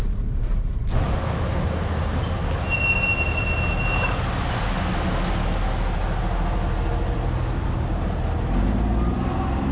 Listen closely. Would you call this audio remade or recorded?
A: recorded